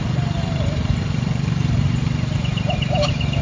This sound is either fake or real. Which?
fake